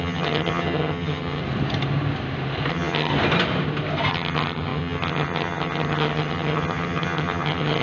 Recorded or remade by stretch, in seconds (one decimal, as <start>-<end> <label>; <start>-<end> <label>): 0.0-1.4 remade; 1.4-2.7 recorded; 2.7-3.1 remade; 3.1-4.1 recorded; 4.1-7.8 remade